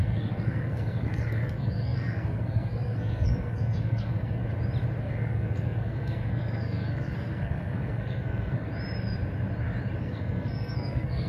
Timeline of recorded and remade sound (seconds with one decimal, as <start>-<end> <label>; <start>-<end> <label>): 0.0-4.4 remade; 4.4-5.0 recorded; 5.0-8.7 remade; 8.7-10.0 recorded; 10.0-11.3 remade